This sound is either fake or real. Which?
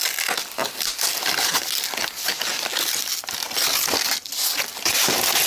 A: real